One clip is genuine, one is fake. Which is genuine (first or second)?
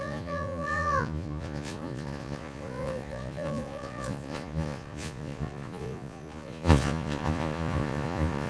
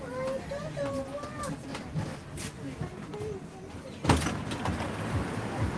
second